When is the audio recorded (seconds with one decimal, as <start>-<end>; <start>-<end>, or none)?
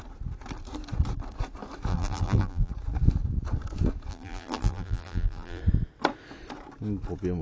0.0-1.9; 2.7-4.1; 5.6-7.4